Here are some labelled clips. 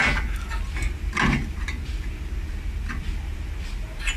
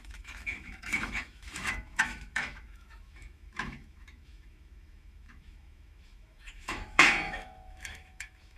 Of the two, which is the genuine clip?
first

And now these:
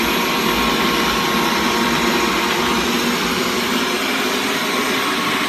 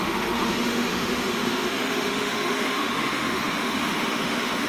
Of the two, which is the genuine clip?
first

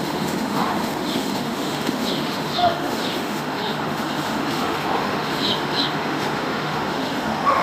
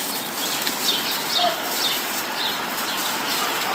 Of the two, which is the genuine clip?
second